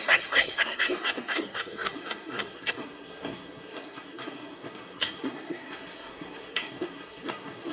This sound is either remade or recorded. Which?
remade